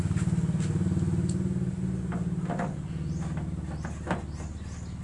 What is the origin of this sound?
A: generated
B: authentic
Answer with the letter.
B